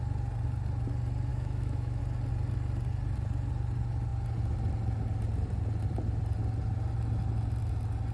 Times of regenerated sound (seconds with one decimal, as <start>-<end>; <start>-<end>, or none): 1.3-2.0